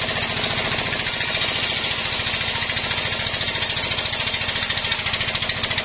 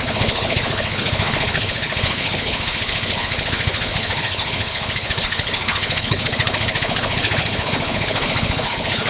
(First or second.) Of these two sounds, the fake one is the second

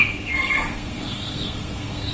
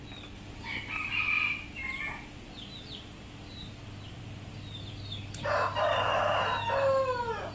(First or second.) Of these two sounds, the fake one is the first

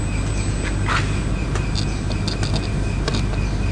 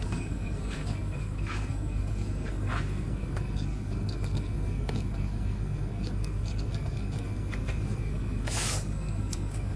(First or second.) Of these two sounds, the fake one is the second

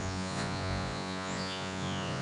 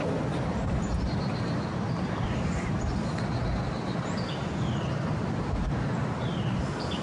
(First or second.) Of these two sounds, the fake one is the first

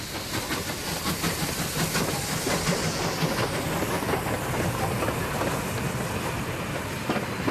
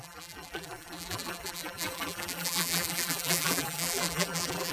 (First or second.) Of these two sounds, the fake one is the second